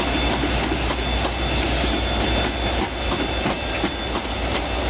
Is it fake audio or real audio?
real